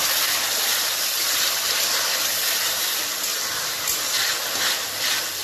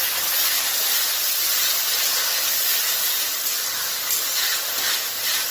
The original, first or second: first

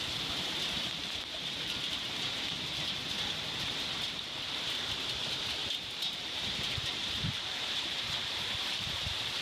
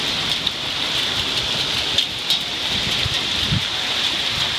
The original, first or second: second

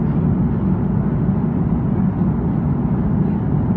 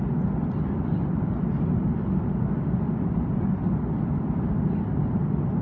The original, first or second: first